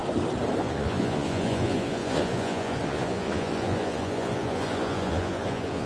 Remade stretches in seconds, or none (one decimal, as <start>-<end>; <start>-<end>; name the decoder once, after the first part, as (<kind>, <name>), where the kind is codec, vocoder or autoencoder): 0.6-5.9 (vocoder, Vocos)